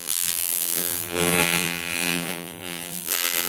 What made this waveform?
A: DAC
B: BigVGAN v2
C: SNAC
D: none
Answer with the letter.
B